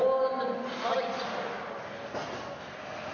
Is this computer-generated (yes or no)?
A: no